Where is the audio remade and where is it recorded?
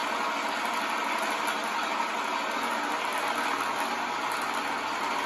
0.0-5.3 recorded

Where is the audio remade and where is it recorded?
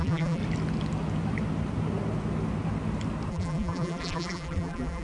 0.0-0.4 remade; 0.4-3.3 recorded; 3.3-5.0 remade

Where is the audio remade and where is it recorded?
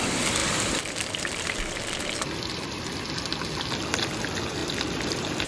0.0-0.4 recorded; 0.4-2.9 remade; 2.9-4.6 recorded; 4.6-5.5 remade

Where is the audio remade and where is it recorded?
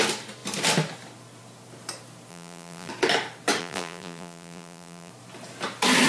0.0-2.3 recorded; 2.3-2.9 remade; 2.9-3.6 recorded; 3.6-5.1 remade; 5.1-6.1 recorded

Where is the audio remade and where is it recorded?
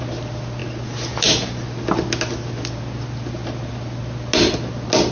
0.0-5.1 recorded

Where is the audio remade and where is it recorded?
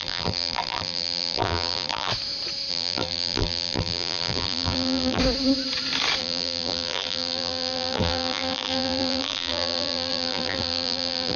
0.0-2.1 remade; 2.1-2.7 recorded; 2.7-5.2 remade; 5.2-6.2 recorded; 6.2-11.4 remade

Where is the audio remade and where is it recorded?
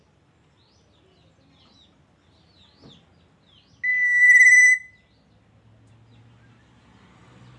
0.0-7.6 recorded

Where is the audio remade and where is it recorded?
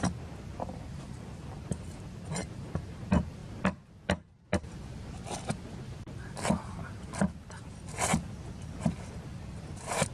0.0-3.4 remade; 3.4-6.9 recorded; 6.9-10.1 remade